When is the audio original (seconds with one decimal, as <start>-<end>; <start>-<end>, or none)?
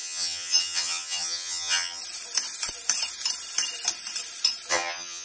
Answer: 2.0-4.7